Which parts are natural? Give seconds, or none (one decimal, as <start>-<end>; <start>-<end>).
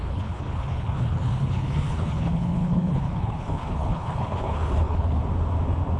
5.2-6.0